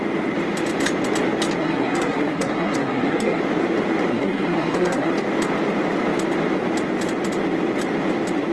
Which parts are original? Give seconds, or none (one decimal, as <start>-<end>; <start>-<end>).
0.0-1.6; 3.4-4.1; 5.1-8.5